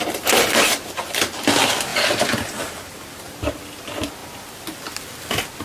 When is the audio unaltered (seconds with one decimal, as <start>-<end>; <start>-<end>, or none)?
0.0-5.6